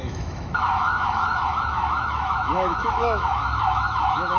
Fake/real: fake